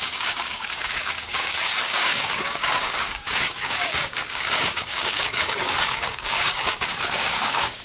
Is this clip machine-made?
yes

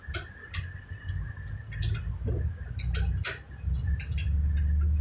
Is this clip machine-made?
no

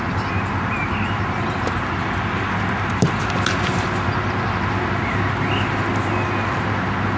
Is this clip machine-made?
no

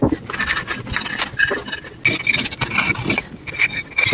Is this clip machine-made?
no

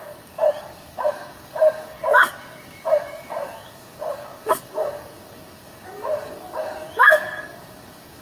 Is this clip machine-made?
yes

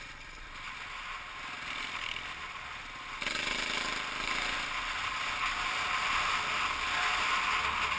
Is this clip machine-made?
no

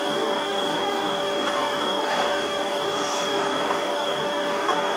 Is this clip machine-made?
yes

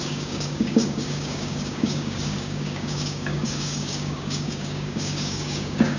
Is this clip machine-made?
yes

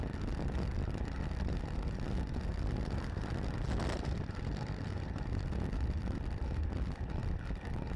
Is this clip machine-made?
no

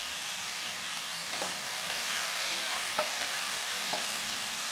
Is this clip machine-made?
yes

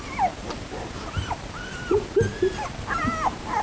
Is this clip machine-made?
no